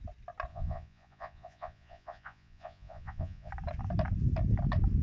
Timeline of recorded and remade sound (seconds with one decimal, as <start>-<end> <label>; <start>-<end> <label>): 0.0-0.5 recorded; 0.5-3.5 remade; 3.5-5.0 recorded